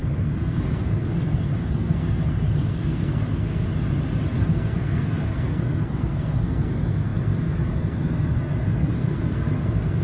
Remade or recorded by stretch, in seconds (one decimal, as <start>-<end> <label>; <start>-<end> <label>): 0.0-3.7 remade; 3.7-4.5 recorded; 4.5-10.0 remade